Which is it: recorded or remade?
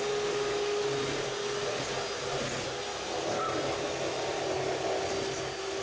recorded